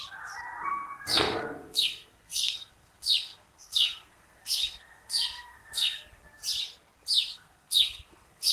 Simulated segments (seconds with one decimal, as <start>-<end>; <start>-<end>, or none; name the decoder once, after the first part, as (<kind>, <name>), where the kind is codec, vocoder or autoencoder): 0.7-6.4 (codec, SNAC); 7.3-8.5